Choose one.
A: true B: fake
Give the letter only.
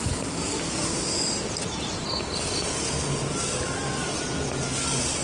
A